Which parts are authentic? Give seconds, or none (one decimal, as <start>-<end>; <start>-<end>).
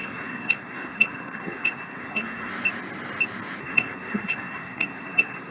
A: 2.5-3.6